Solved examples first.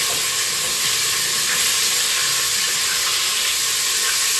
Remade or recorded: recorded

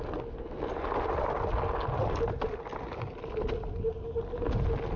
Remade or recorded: recorded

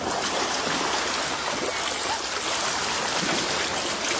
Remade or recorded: recorded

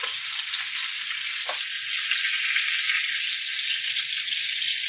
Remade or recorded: recorded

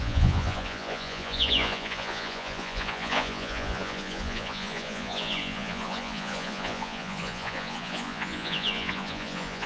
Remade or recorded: remade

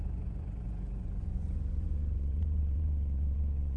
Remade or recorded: remade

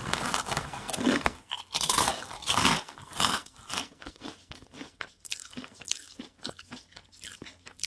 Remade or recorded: remade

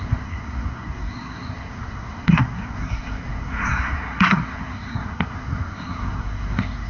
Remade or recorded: remade